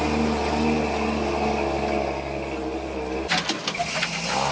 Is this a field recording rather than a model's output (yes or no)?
yes